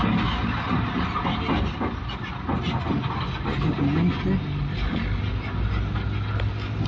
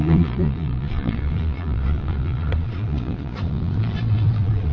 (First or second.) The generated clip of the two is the second